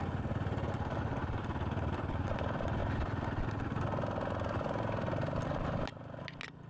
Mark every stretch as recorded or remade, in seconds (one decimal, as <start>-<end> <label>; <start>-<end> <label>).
0.0-6.7 recorded